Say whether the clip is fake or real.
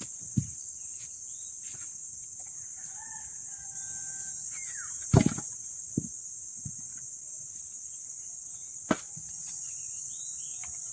real